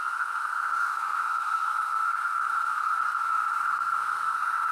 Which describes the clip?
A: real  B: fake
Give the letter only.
B